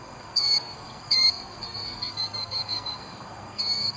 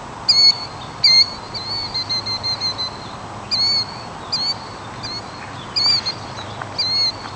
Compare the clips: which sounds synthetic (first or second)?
first